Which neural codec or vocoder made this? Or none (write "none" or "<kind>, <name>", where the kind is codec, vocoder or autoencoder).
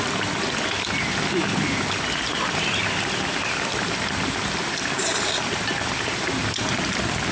vocoder, BigVGAN v2